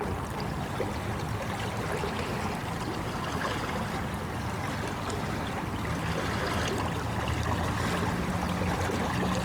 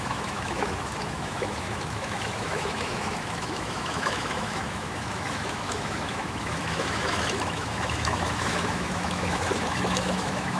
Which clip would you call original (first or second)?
first